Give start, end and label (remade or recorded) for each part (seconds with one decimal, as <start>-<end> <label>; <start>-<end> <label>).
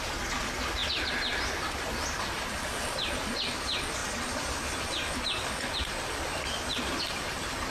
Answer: 0.0-7.7 recorded